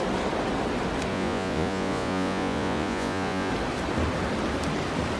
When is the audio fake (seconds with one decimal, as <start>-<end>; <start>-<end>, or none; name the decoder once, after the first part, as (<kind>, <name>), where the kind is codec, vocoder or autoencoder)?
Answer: 1.1-3.5 (vocoder, Vocos)